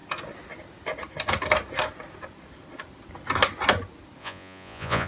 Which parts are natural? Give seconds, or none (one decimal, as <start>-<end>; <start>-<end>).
0.0-4.2